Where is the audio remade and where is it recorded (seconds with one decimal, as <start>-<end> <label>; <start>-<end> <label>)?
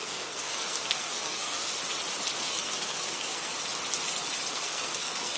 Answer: 0.0-1.8 remade; 1.8-2.4 recorded; 2.4-3.5 remade; 3.5-4.5 recorded; 4.5-5.4 remade